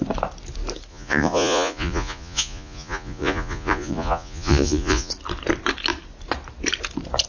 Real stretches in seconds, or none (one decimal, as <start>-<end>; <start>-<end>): 0.0-0.9; 5.1-7.3